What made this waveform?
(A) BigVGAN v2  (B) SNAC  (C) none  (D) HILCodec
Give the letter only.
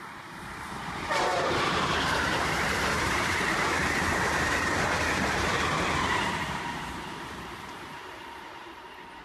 A